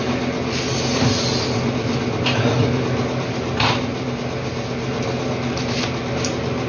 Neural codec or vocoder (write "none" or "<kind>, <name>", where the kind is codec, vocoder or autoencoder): none